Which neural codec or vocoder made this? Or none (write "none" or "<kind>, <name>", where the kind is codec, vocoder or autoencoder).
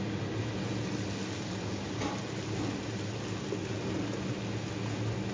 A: none